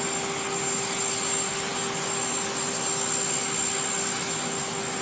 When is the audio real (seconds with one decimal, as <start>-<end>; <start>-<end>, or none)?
0.0-5.0